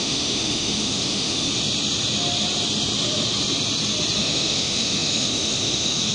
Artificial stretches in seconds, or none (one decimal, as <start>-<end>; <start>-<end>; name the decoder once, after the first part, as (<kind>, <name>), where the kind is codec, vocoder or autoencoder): 0.0-1.5 (autoencoder, DAC-VAE); 4.2-6.1